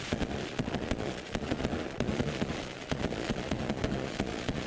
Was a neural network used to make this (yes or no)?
yes